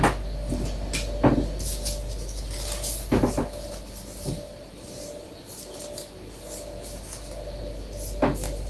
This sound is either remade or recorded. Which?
recorded